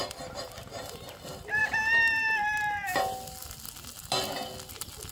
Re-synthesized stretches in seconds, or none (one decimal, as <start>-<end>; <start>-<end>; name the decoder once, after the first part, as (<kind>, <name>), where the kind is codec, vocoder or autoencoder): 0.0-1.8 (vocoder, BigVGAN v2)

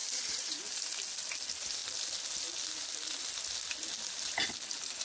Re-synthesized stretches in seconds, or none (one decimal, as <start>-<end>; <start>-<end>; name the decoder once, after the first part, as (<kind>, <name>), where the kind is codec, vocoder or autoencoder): 0.0-0.6 (vocoder, BigVGAN v2)

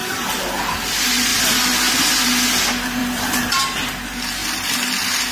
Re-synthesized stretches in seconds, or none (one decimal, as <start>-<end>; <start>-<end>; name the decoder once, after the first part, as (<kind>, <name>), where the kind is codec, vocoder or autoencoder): 0.0-0.6 (vocoder, BigVGAN v2); 1.3-1.9; 3.0-3.6

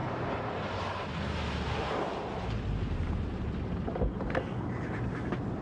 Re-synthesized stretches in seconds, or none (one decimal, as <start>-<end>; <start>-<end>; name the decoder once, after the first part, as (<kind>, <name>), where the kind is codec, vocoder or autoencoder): 0.0-3.4 (vocoder, BigVGAN v2)

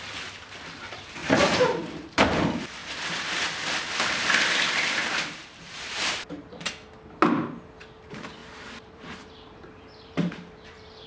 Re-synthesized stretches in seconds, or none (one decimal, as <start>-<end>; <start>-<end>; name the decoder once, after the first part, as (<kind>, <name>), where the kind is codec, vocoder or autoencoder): 1.2-2.4 (vocoder, BigVGAN v2); 5.0-6.7; 8.4-11.1